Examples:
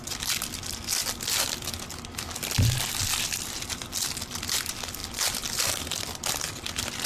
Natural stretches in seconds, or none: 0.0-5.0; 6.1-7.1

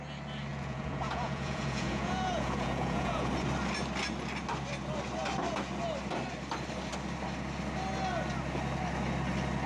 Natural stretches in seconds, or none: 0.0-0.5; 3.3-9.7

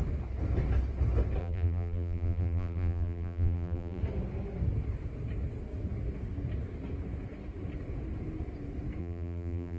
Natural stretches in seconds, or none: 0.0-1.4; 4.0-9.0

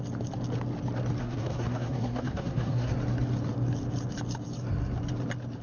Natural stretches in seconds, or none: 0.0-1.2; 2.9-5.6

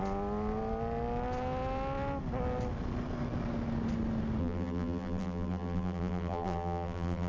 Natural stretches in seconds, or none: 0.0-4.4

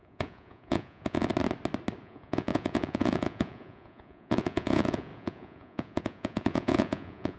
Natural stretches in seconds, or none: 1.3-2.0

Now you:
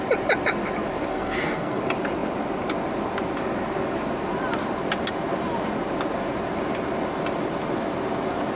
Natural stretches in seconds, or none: 0.0-1.1; 1.8-8.5